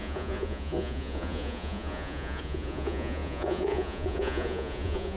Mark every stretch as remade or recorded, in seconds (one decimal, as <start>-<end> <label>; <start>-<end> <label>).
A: 0.0-5.2 remade